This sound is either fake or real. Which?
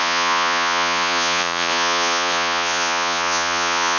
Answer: fake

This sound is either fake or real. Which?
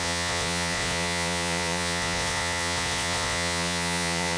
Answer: fake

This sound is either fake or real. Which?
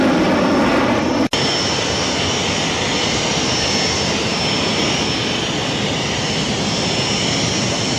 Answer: real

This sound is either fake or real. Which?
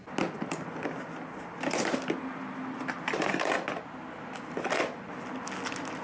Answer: real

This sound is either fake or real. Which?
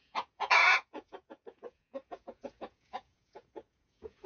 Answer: fake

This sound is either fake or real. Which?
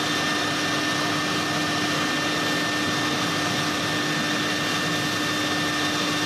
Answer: real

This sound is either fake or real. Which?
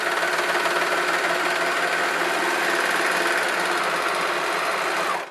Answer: real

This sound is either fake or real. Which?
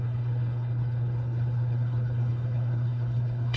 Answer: fake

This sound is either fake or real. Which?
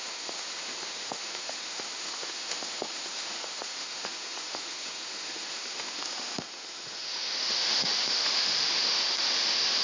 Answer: fake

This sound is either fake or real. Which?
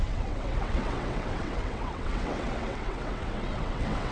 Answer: fake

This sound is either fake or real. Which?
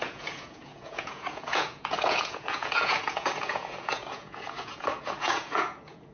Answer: fake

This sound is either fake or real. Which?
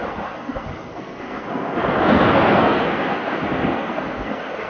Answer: fake